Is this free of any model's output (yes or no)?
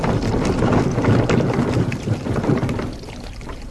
yes